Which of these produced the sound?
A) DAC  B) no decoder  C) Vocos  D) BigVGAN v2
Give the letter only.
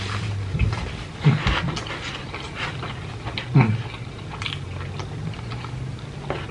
B